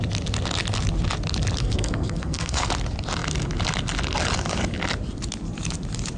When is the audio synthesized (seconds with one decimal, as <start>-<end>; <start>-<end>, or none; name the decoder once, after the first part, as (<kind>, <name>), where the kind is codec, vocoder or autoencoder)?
1.6-2.7 (codec, SNAC)